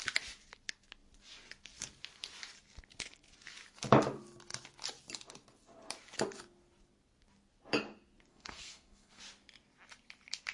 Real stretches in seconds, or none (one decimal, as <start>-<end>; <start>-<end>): 0.0-8.3; 9.2-10.5